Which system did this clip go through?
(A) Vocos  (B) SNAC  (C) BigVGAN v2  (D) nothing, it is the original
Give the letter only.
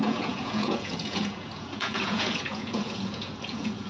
A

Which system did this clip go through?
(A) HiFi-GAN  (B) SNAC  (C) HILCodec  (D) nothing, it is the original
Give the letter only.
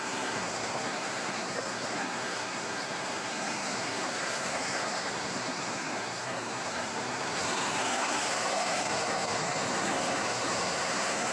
B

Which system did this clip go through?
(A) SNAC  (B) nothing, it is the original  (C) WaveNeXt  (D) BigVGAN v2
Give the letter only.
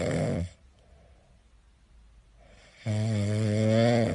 B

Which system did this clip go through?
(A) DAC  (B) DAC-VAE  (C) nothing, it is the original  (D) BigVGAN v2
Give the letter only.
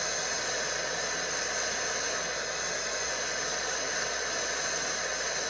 C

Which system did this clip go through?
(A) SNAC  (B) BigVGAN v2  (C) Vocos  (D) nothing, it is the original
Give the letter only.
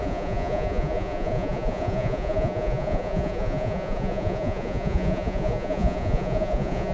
C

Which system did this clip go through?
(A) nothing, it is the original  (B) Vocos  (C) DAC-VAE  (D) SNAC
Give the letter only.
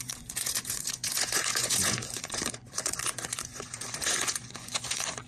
B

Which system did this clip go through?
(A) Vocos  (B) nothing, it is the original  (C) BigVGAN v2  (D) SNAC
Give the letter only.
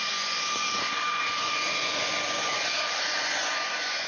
A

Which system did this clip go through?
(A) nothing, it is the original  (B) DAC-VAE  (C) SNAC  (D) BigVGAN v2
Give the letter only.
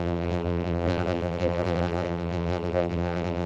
D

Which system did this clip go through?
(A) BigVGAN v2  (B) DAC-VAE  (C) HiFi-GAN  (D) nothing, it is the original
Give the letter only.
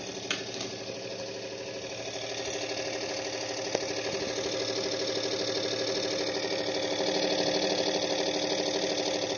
D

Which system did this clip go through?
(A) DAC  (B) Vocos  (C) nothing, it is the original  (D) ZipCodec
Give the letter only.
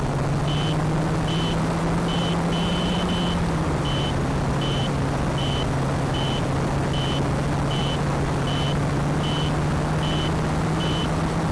C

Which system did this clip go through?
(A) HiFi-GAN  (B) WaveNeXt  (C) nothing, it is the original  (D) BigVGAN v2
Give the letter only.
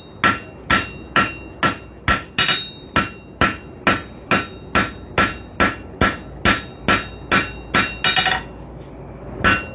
C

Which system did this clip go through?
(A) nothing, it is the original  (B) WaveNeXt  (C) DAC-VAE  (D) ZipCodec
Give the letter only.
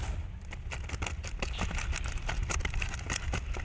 A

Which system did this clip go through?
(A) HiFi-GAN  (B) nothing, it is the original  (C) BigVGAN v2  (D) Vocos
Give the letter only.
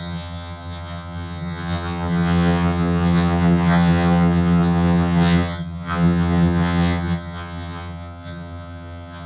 A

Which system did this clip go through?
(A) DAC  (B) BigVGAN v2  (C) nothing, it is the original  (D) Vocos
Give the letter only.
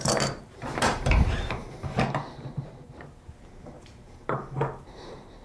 B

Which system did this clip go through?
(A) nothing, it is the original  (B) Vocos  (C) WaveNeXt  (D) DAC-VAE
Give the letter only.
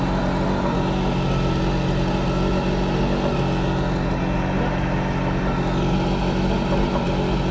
A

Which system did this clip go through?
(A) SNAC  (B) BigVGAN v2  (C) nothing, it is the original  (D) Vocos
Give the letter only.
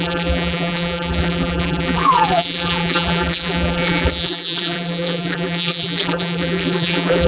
B